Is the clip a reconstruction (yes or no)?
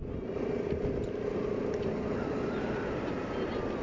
no